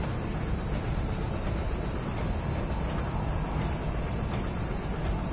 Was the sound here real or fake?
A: fake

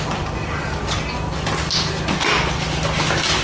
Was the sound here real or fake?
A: real